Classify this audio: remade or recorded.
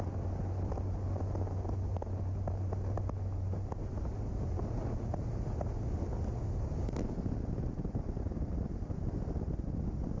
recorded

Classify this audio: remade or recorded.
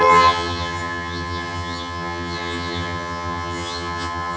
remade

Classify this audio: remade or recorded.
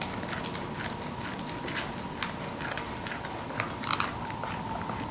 recorded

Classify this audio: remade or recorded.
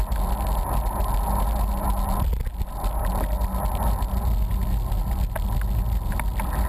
recorded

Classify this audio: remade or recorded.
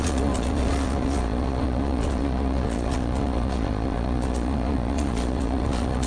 remade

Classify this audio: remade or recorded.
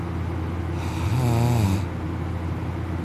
recorded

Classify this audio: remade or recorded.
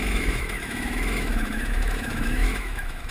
remade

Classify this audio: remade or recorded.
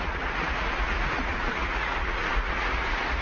remade